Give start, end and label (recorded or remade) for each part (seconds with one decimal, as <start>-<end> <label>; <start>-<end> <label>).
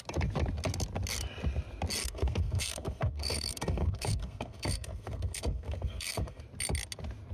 0.0-2.0 recorded; 2.0-6.4 remade; 6.4-7.3 recorded